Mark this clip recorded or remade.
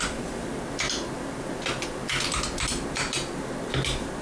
recorded